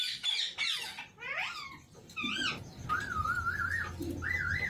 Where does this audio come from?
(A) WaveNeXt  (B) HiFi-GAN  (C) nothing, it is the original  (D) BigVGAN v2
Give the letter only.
C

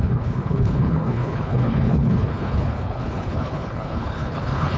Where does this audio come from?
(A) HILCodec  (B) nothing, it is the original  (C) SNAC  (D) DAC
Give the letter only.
A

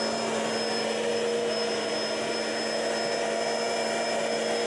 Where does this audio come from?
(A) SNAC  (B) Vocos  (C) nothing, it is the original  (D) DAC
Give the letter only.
C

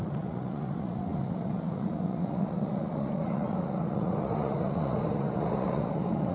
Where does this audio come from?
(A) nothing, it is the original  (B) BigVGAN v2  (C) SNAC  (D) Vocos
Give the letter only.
D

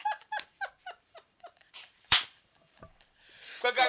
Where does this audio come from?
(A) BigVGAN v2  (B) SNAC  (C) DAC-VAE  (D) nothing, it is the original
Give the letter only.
A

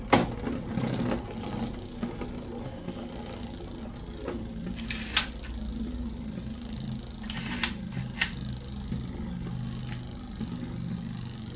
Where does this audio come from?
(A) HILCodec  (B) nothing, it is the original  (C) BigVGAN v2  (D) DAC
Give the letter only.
B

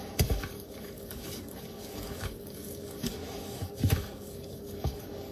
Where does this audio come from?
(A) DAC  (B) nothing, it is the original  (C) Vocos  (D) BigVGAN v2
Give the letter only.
A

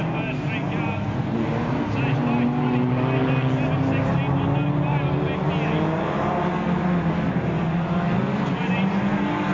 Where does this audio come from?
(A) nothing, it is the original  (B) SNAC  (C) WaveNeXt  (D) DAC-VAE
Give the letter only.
A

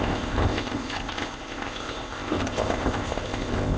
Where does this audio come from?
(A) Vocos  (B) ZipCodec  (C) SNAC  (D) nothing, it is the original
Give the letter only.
B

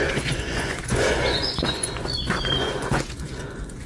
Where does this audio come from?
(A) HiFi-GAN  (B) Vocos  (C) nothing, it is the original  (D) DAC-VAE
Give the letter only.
B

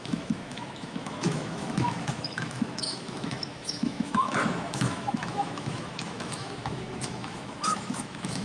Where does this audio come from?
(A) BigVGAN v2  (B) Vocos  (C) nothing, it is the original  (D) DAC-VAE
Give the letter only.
D